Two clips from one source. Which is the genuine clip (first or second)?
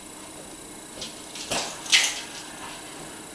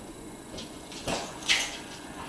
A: first